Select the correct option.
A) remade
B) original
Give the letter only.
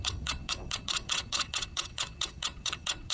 A